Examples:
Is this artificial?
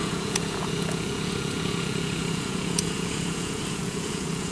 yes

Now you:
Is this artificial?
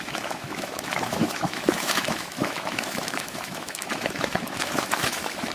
yes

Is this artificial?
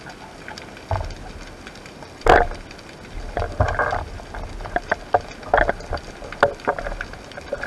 no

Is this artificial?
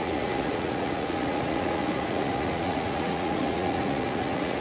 yes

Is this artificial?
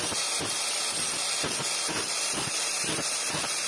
no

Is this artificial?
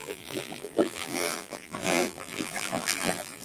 yes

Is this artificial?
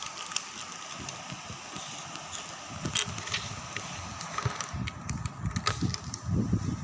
no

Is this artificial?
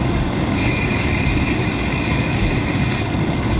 yes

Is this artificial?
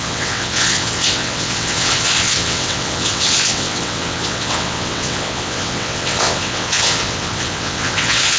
yes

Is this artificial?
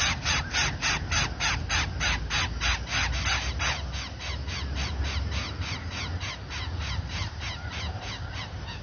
no